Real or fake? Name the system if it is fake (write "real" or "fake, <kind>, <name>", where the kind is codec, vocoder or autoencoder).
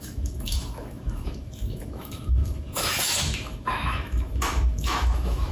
fake, autoencoder, DAC-VAE